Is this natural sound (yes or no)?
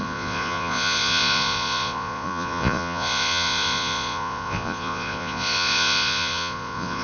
no